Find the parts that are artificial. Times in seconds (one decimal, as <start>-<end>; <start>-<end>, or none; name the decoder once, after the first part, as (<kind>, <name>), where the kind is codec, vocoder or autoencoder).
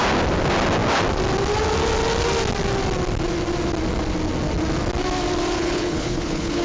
5.6-6.6 (codec, HILCodec)